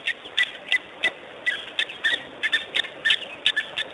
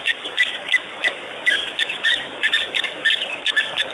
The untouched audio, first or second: first